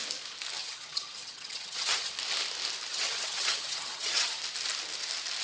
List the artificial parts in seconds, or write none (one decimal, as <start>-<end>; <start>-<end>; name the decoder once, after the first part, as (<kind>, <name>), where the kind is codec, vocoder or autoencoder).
0.6-2.1 (vocoder, HiFi-GAN); 2.9-4.4

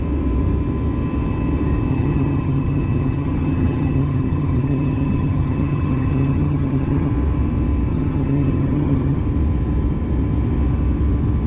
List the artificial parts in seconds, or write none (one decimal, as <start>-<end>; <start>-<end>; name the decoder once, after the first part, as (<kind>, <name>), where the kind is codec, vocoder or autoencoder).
1.9-7.1 (vocoder, HiFi-GAN); 7.9-9.2